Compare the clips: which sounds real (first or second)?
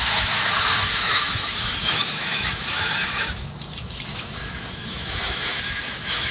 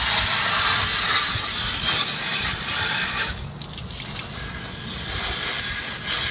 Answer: second